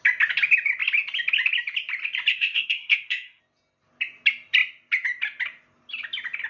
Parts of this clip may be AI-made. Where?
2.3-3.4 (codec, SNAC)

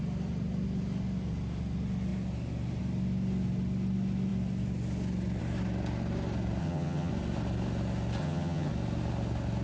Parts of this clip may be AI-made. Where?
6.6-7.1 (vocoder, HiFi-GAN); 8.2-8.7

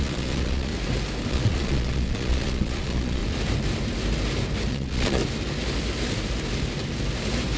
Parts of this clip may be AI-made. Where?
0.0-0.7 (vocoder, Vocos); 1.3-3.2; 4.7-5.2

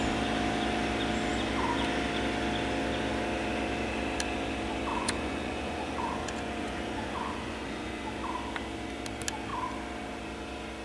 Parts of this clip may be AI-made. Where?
4.9-8.0 (vocoder, Vocos)

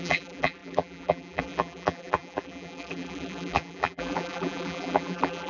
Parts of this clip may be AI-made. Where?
0.0-5.5 (vocoder, BigVGAN v2)

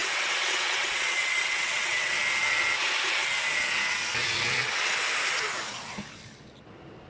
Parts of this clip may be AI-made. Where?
0.0-2.1 (vocoder, WaveNeXt)